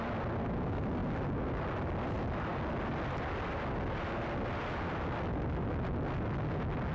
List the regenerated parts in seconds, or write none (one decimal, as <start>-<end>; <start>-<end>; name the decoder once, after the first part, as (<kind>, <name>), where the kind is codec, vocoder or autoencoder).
none